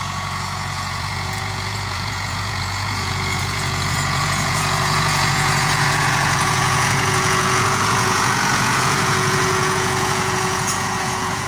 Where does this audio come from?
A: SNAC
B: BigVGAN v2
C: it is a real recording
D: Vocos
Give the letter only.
D